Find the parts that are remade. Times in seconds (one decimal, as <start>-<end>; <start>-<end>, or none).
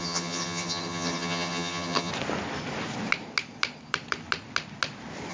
0.0-2.1